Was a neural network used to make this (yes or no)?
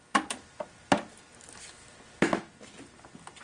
no